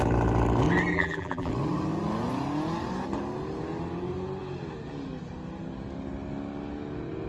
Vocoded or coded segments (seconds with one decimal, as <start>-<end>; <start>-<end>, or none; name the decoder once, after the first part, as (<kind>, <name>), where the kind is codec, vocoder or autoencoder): 0.9-1.5 (vocoder, BigVGAN v2)

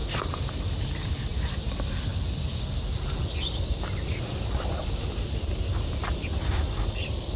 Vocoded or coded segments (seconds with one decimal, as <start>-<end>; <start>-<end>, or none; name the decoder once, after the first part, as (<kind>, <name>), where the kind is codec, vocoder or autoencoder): 0.0-1.7 (vocoder, BigVGAN v2)

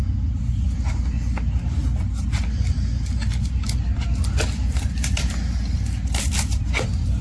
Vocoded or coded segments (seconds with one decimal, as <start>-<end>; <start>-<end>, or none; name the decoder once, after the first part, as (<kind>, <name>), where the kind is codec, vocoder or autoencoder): 4.1-7.2 (vocoder, BigVGAN v2)

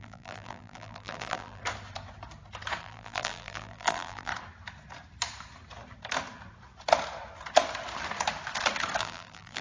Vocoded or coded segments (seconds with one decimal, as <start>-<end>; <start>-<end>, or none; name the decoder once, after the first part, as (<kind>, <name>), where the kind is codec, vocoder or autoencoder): 0.0-1.6 (vocoder, BigVGAN v2); 2.8-4.3; 9.0-9.6

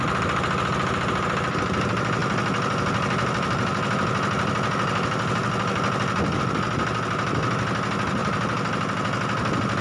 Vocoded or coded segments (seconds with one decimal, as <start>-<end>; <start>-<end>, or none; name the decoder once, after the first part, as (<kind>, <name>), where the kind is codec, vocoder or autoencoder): none

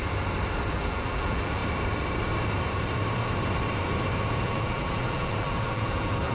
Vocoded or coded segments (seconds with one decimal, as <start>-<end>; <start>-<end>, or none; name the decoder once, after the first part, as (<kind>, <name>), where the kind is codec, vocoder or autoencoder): 0.7-1.6 (vocoder, BigVGAN v2); 4.4-6.3